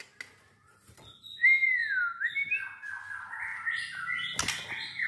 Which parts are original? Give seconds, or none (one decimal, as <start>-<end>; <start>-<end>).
0.0-5.1

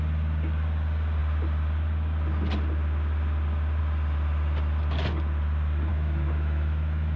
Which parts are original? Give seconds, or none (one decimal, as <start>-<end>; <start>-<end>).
0.0-5.9

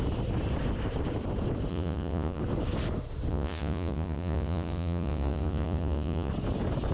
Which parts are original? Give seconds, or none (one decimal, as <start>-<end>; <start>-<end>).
0.0-1.7; 2.4-3.3; 6.3-6.9

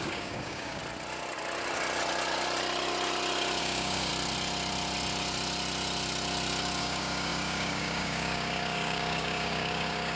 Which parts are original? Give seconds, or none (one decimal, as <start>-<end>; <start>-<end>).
0.8-3.6; 4.1-6.8